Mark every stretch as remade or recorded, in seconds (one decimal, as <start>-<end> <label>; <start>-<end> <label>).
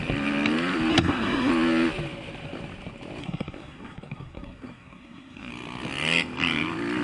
0.0-0.9 recorded; 0.9-1.5 remade; 1.5-3.2 recorded; 3.2-5.5 remade; 5.5-7.0 recorded